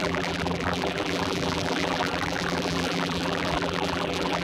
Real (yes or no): no